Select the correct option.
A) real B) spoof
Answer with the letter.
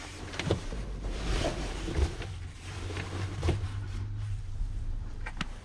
B